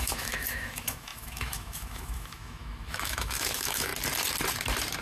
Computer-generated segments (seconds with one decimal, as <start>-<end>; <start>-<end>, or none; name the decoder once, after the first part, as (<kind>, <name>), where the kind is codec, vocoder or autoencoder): 0.0-3.9 (autoencoder, DAC-VAE)